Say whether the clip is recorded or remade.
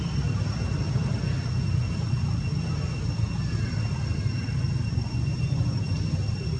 recorded